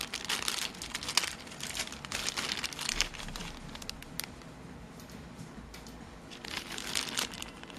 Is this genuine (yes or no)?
yes